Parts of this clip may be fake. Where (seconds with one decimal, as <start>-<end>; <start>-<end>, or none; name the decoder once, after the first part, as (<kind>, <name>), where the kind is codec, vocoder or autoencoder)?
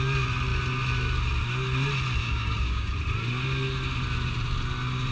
2.2-2.9 (codec, DAC)